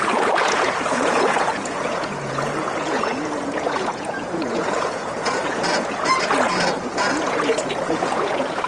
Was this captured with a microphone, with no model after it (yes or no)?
no